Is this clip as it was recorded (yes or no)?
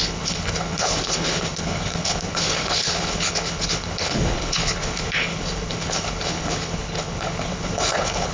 no